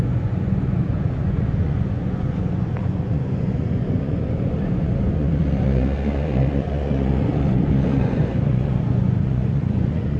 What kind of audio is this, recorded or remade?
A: remade